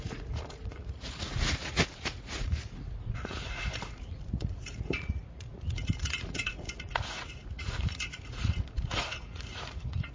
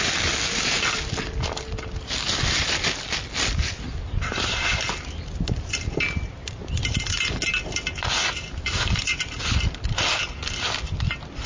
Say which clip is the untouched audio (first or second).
second